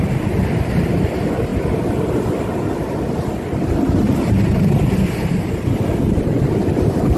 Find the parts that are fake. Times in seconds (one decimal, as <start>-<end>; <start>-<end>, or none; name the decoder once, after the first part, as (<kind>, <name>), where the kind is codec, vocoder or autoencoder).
none